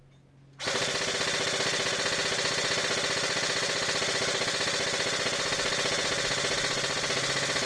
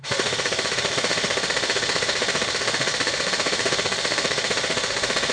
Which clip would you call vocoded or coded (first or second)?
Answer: second